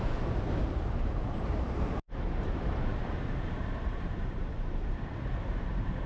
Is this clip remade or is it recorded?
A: remade